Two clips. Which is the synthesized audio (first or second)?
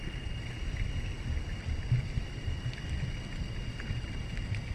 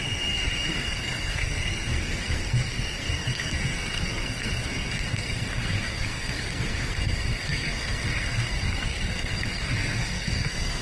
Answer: second